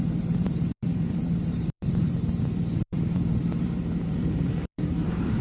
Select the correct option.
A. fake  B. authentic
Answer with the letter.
A